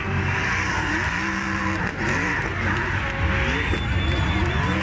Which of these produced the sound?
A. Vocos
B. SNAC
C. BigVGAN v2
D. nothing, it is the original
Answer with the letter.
D